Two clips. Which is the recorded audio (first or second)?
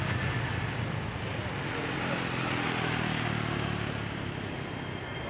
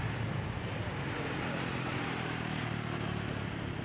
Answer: first